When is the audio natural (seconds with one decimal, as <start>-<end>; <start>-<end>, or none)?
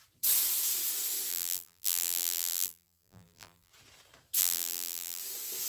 0.0-1.3; 3.7-4.4; 5.2-5.7